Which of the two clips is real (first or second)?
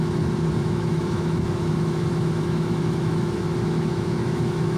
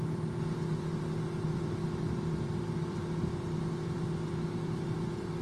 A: second